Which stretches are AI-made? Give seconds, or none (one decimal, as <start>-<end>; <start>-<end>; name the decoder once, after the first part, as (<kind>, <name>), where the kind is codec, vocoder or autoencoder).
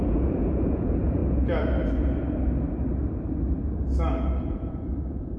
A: 0.0-1.2 (vocoder, Vocos); 4.4-5.4